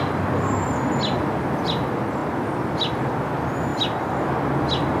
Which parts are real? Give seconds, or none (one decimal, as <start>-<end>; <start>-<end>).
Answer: 0.0-5.0